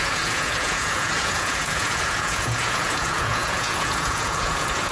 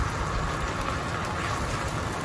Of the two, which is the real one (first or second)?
second